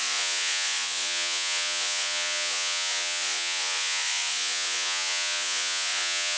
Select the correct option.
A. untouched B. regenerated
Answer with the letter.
B